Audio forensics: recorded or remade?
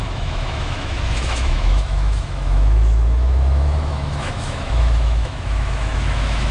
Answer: remade